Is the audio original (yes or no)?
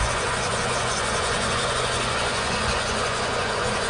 no